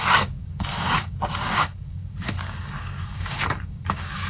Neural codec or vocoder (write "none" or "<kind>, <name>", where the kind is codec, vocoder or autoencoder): codec, DAC